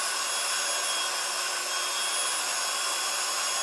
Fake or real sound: real